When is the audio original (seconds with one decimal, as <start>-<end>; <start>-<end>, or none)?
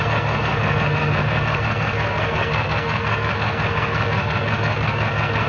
none